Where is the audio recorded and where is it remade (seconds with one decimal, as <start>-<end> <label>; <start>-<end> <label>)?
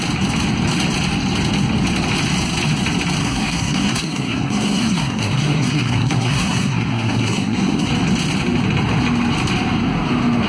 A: 0.0-3.2 recorded; 3.2-7.9 remade; 7.9-10.5 recorded